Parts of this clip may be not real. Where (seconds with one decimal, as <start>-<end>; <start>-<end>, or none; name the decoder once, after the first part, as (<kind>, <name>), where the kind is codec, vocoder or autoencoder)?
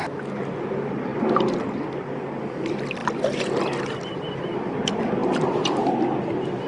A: 0.0-3.0 (vocoder, BigVGAN v2); 4.0-6.7